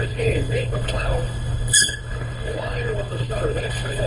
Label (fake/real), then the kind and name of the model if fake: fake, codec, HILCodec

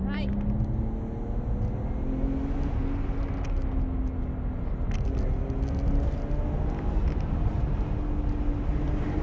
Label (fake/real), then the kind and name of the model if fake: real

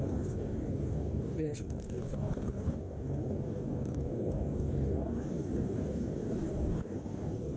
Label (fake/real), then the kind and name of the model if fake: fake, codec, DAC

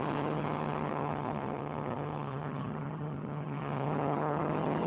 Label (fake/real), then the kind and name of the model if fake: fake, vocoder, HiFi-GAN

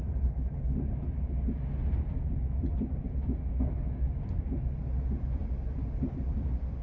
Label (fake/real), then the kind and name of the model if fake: real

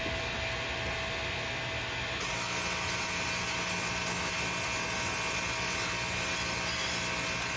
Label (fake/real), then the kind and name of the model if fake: real